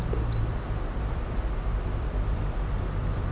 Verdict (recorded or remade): remade